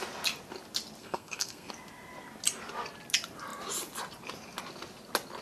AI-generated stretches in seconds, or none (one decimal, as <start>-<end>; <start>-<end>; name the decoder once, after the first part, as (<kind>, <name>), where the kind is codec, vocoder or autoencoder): 1.0-1.7 (codec, SNAC)